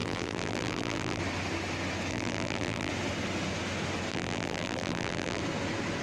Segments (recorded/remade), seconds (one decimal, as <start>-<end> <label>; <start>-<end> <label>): 0.0-1.2 remade; 1.2-2.1 recorded; 2.1-2.9 remade; 2.9-4.1 recorded; 4.1-5.4 remade; 5.4-6.0 recorded

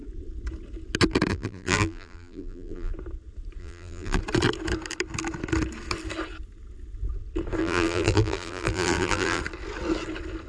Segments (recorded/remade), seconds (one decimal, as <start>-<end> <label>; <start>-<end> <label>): 0.0-1.3 recorded; 1.3-2.9 remade; 2.9-3.6 recorded; 3.6-4.2 remade; 4.2-7.6 recorded; 7.6-9.4 remade; 9.4-10.5 recorded

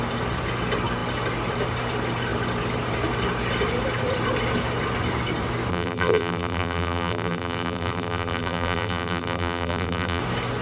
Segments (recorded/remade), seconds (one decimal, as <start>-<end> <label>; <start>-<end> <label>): 0.0-5.7 recorded; 5.7-10.2 remade; 10.2-10.6 recorded

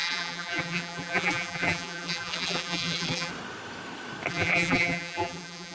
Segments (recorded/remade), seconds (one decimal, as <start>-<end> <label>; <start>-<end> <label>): 0.0-3.3 remade; 3.3-4.3 recorded; 4.3-5.7 remade

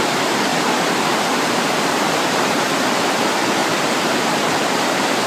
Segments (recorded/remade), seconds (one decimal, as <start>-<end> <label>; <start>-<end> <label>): 0.0-0.5 recorded; 0.5-3.0 remade; 3.0-3.6 recorded; 3.6-5.3 remade